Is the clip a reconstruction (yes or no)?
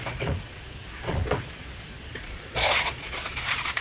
yes